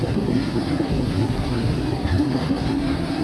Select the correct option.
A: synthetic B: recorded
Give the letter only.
A